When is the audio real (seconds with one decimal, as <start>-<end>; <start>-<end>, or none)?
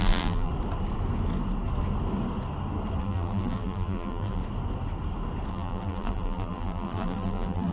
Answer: 0.5-3.0; 4.4-5.5